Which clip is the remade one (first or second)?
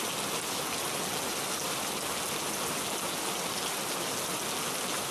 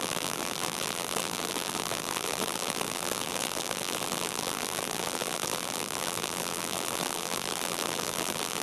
second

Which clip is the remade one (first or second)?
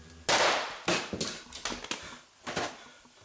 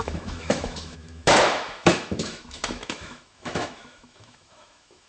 second